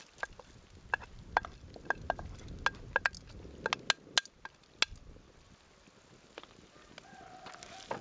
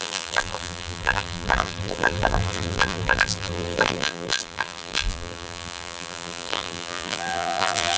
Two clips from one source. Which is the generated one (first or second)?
second